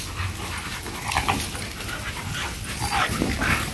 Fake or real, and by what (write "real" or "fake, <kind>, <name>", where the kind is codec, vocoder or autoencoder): real